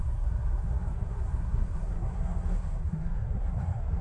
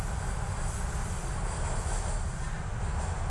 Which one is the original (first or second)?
second